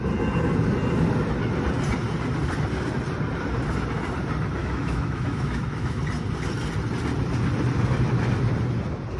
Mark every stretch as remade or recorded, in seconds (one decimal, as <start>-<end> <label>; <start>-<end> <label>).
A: 0.0-4.6 recorded; 4.6-6.0 remade; 6.0-9.2 recorded